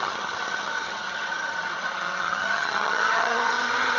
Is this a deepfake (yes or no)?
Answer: yes